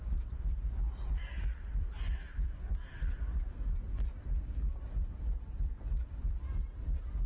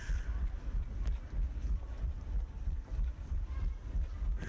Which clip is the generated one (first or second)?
second